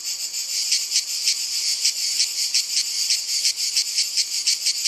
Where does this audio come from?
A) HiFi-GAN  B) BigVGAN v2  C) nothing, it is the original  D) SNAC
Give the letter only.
C